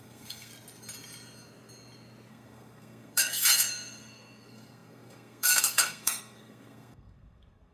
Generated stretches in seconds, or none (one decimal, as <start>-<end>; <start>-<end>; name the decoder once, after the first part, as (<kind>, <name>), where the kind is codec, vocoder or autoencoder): 0.0-0.5 (codec, SNAC); 2.3-7.7